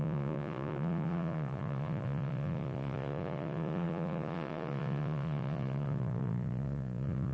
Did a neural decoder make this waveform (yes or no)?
yes